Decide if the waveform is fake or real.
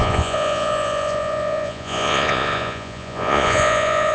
fake